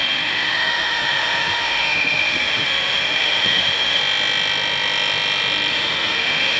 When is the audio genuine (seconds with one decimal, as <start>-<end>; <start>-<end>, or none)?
4.0-5.7